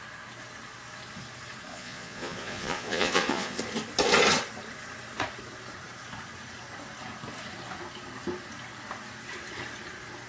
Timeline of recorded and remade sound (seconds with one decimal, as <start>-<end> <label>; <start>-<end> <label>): 0.0-1.7 recorded; 1.7-3.6 remade; 3.6-10.3 recorded